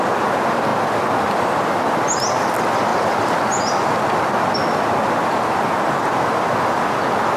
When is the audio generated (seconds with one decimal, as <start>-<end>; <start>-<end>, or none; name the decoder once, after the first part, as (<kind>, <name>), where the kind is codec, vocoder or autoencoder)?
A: none

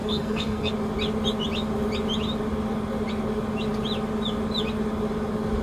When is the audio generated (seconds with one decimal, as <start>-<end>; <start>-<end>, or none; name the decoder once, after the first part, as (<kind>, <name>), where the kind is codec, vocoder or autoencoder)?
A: 0.0-0.7 (codec, SNAC)